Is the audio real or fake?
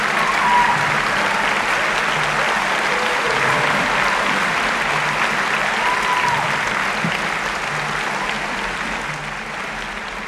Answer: real